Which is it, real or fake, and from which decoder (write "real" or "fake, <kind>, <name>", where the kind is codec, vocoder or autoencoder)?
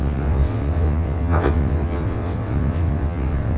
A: fake, vocoder, WaveNeXt